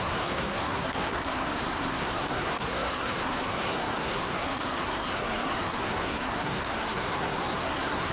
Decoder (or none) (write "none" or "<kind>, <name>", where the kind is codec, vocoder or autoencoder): codec, SNAC